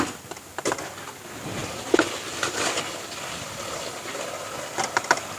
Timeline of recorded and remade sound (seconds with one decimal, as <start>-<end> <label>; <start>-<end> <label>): 0.0-1.6 recorded; 1.6-4.3 remade; 4.3-5.4 recorded